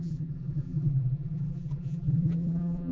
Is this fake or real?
fake